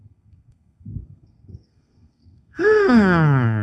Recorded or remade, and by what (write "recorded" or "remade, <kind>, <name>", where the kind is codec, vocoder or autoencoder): remade, codec, SNAC